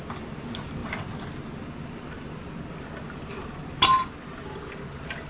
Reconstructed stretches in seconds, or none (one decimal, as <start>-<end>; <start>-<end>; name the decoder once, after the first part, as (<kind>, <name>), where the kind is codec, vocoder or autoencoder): none